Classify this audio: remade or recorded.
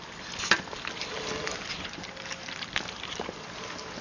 recorded